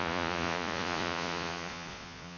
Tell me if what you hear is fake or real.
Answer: fake